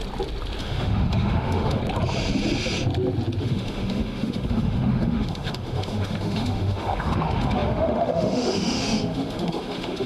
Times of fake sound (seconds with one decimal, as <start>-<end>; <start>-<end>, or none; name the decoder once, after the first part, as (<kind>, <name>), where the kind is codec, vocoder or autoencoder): 0.6-1.8 (autoencoder, DAC-VAE); 3.4-10.1